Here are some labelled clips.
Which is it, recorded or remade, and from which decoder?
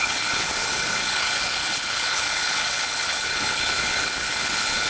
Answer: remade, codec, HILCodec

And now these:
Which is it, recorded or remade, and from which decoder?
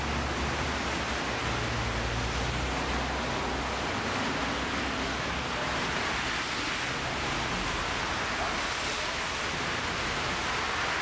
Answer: recorded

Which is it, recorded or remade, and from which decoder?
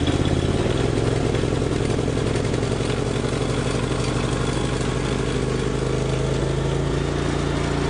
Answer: recorded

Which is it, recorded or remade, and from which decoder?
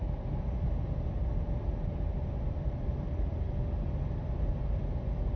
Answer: recorded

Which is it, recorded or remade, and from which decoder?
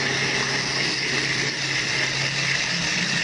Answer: recorded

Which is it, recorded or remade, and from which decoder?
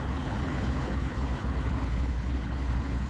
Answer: remade, codec, HILCodec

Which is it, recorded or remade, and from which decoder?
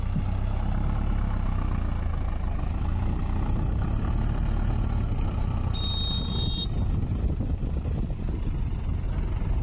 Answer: recorded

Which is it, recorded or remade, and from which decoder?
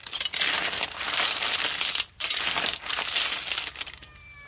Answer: recorded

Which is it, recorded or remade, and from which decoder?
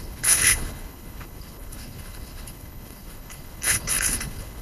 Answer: remade, codec, HILCodec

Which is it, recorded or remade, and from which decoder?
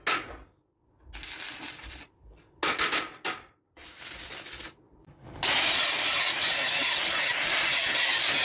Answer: recorded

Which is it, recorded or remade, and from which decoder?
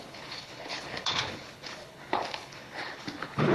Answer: remade, codec, HILCodec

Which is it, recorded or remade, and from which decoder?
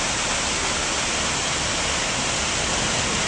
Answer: recorded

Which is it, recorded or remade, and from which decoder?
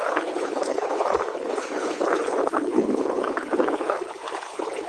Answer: remade, codec, HILCodec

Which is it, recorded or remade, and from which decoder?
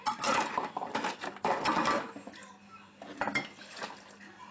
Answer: recorded